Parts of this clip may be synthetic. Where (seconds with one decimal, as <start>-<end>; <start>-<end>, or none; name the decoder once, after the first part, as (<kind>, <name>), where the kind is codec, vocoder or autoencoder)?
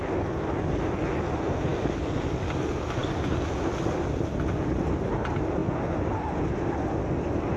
none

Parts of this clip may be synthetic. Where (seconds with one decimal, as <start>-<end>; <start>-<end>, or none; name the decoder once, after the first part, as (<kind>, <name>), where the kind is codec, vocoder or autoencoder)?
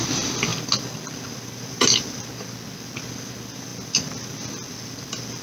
none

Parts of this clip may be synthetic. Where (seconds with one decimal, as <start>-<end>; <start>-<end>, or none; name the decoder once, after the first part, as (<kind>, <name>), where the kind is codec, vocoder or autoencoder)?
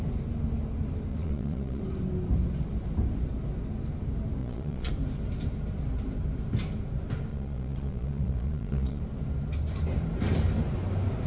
1.1-1.8 (vocoder, Vocos); 4.4-4.9; 7.3-9.0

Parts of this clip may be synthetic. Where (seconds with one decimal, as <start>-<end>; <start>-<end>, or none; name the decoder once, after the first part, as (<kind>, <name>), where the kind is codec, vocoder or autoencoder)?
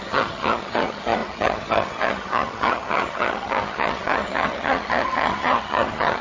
0.0-6.2 (vocoder, HiFi-GAN)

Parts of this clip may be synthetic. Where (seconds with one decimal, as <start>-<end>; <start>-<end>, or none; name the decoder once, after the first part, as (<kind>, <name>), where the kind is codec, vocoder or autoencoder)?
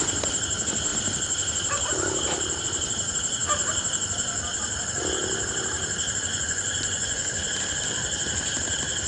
6.3-7.3 (vocoder, Vocos)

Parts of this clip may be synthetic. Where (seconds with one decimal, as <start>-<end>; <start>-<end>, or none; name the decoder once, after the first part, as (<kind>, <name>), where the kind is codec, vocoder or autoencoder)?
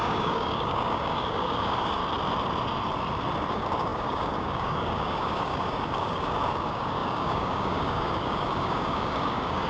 0.0-2.0 (codec, DAC); 3.5-9.7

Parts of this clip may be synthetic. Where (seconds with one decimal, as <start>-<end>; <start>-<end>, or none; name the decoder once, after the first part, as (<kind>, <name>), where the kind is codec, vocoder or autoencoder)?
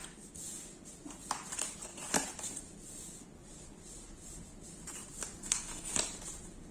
5.4-5.9 (codec, SNAC)